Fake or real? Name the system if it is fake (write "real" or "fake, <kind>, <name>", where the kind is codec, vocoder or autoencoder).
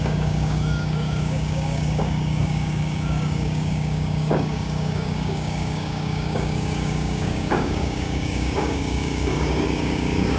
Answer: fake, codec, DAC